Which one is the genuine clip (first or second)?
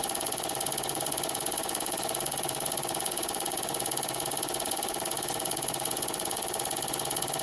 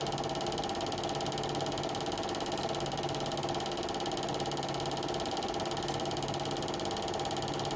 second